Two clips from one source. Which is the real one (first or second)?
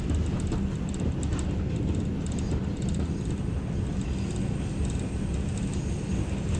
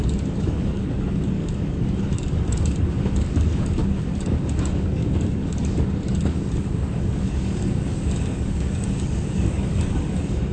first